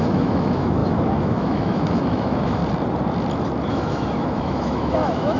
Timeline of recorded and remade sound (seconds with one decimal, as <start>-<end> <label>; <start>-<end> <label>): 0.0-2.6 remade; 2.6-3.7 recorded; 3.7-5.4 remade